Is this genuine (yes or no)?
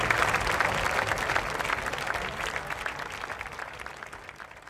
yes